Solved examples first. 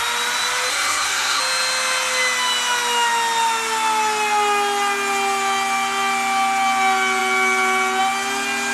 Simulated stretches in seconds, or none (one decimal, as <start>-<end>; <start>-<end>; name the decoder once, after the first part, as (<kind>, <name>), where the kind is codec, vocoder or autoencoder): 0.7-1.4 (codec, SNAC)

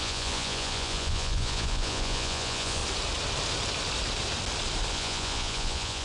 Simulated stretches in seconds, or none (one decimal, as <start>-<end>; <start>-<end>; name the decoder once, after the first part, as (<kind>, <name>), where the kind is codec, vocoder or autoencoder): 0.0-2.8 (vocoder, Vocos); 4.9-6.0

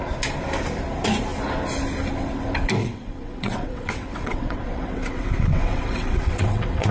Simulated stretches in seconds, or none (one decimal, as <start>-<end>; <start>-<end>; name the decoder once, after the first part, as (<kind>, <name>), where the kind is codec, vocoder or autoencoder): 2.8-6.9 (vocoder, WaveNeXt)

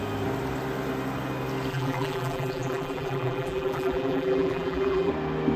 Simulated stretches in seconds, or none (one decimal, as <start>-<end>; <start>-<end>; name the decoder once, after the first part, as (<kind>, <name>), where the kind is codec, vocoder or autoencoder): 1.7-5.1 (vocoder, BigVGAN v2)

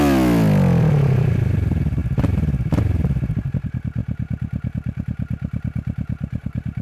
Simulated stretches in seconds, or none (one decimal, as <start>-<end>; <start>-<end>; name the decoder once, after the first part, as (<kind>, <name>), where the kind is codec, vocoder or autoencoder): none